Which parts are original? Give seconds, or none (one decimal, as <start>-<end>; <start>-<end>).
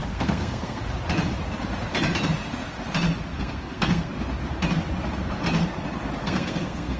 0.8-3.3; 4.1-6.2